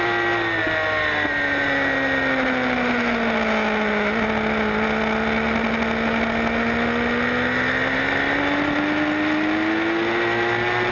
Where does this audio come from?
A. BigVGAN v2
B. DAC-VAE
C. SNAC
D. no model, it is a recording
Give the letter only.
D